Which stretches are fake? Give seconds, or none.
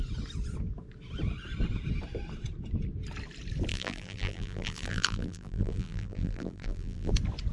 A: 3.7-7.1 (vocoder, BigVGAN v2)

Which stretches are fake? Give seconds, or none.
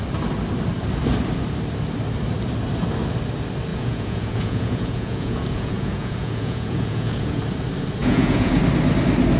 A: 3.7-7.4 (vocoder, Vocos); 8.0-8.6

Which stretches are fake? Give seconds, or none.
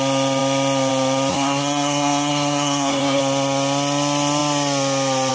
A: 1.3-3.2 (codec, SNAC)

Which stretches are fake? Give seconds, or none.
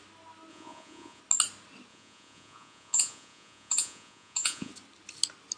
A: 0.5-1.2 (vocoder, Vocos); 1.9-4.7